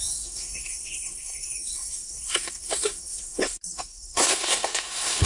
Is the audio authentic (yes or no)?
no